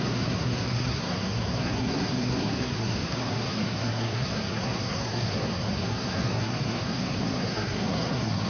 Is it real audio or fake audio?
fake